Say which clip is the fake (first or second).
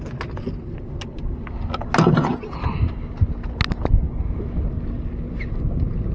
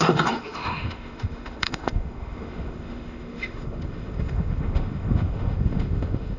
second